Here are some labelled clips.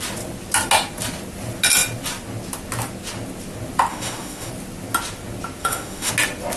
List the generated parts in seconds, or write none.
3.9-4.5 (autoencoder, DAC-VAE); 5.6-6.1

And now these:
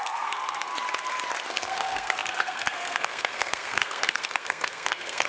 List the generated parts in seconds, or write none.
0.0-0.7 (codec, SNAC); 1.5-5.3

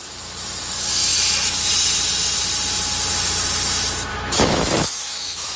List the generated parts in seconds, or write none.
4.1-5.6 (autoencoder, DAC-VAE)

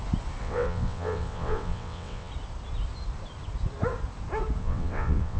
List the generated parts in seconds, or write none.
0.4-2.3 (vocoder, WaveNeXt); 4.6-5.4

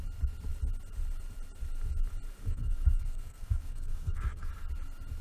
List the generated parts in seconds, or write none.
2.4-4.5 (codec, SNAC)

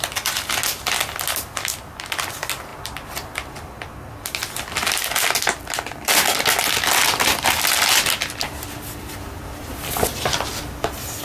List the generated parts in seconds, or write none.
none

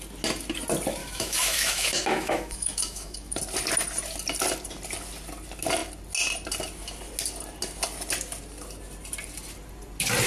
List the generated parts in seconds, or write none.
1.0-3.4 (autoencoder, DAC-VAE)

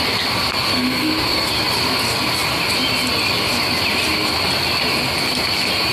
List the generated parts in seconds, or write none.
0.7-1.5 (codec, SNAC)